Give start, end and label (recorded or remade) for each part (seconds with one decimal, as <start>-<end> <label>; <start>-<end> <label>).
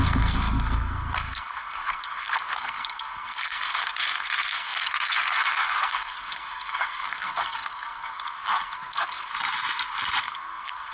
0.0-9.3 remade; 9.3-10.2 recorded; 10.2-10.9 remade